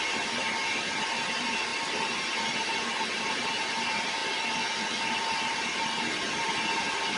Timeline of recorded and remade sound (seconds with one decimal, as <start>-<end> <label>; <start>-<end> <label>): 0.0-4.2 remade; 4.2-5.2 recorded; 5.2-7.2 remade